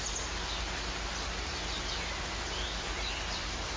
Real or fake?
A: real